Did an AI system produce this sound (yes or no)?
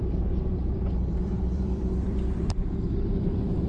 yes